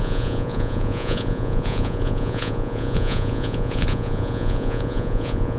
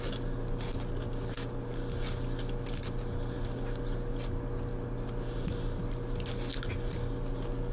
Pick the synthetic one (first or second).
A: first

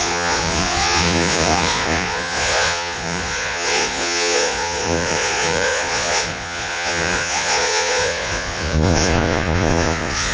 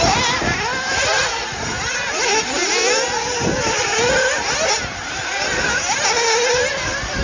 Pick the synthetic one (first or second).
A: first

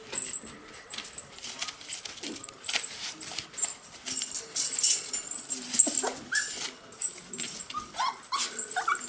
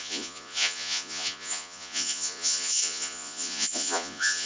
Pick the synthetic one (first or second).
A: second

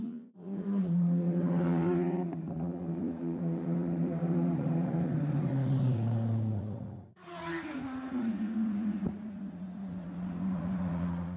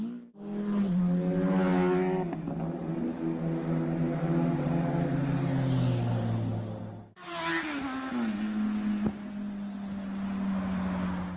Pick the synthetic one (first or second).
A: first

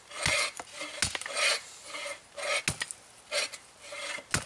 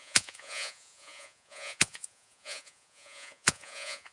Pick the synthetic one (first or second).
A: second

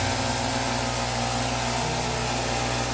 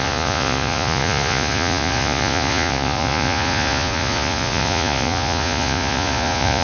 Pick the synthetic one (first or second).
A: second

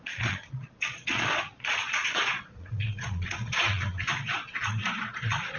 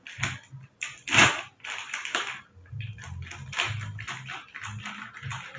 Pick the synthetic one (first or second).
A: first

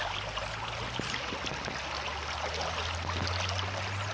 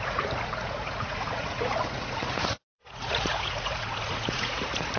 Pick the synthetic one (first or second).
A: second